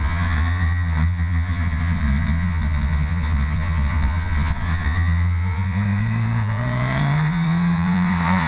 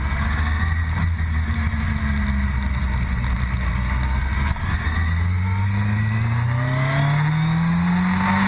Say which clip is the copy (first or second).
first